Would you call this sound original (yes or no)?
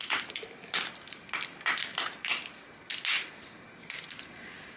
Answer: yes